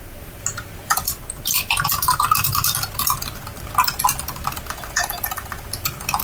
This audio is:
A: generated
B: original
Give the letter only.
B